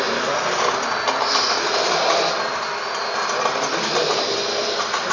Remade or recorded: recorded